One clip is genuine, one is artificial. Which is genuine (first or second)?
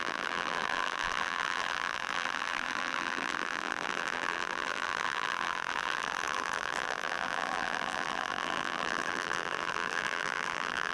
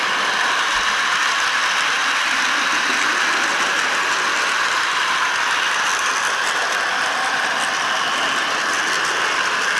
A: second